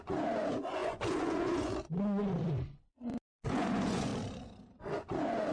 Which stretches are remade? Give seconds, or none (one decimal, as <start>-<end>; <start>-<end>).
0.0-4.1; 4.8-5.5